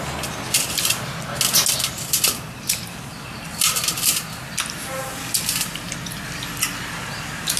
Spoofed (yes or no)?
no